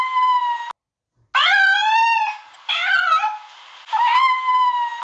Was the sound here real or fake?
real